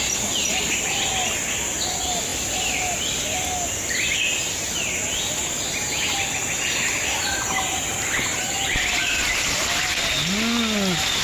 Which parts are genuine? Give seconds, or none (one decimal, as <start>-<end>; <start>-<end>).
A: 0.0-11.2